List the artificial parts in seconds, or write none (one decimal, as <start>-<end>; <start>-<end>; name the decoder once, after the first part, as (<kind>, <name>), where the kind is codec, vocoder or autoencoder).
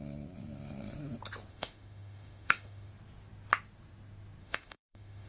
1.5-2.9 (autoencoder, DAC-VAE); 4.4-5.3